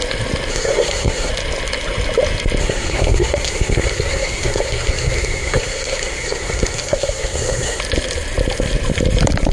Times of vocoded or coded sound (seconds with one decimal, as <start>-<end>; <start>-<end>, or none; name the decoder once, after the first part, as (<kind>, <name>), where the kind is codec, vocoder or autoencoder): 0.5-1.3 (codec, SNAC); 2.6-7.8